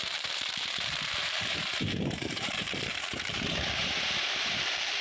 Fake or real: fake